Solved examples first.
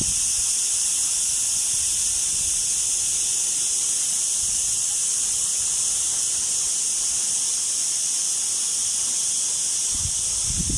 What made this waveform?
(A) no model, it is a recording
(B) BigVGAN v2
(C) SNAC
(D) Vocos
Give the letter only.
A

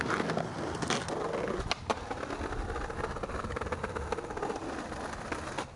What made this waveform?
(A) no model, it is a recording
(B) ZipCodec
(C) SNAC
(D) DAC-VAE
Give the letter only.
A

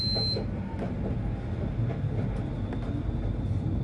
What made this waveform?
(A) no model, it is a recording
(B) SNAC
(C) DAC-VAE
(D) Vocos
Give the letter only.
A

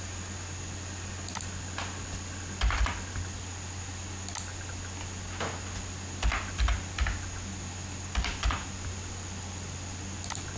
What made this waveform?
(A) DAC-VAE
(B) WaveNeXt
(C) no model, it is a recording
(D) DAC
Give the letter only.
C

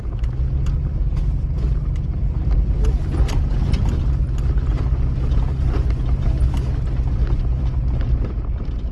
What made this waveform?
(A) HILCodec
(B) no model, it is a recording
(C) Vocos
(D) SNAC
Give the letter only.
B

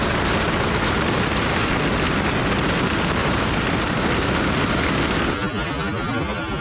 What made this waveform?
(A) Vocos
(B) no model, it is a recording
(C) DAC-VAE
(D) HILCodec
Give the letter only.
B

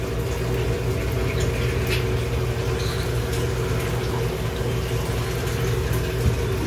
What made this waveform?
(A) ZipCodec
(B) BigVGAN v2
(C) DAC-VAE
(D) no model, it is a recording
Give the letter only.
D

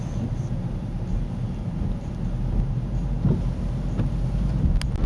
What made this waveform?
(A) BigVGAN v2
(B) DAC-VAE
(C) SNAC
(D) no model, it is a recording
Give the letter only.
D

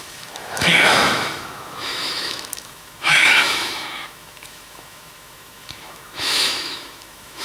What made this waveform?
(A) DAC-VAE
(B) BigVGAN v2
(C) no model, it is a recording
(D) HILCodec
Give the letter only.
A